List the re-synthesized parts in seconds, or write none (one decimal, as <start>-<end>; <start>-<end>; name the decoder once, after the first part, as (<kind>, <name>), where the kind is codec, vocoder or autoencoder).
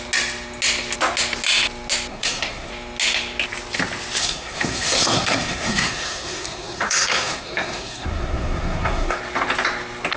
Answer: 2.1-2.7 (codec, SNAC); 4.2-9.2